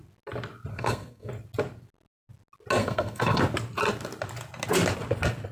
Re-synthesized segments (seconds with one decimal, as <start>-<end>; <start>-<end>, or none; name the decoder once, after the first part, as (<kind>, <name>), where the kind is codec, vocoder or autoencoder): 0.7-1.3 (codec, SNAC); 2.8-3.4